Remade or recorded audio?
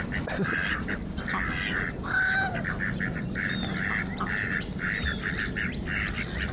recorded